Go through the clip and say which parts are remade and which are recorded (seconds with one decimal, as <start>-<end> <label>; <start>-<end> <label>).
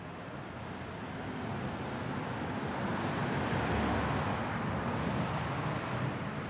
0.0-6.5 recorded